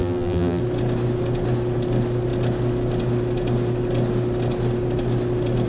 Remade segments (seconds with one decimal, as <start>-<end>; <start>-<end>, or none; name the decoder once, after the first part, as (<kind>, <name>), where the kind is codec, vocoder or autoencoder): 0.0-0.6 (vocoder, BigVGAN v2)